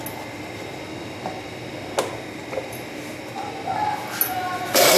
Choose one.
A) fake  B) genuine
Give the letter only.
B